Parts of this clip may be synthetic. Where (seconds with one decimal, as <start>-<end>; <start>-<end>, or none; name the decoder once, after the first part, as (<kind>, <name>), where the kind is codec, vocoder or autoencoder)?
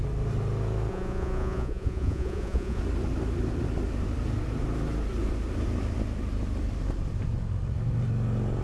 0.9-2.8 (vocoder, Vocos)